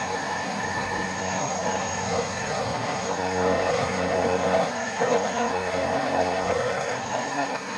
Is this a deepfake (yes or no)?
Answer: yes